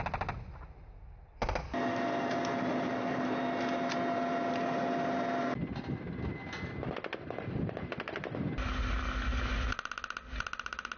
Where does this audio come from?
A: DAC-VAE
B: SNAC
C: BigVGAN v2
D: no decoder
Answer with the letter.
D